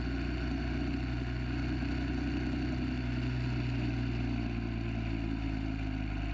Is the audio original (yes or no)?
yes